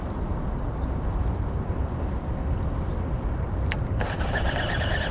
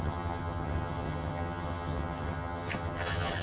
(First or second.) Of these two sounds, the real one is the first